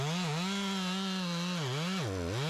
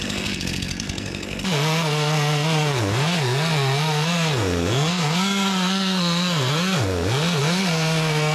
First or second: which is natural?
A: first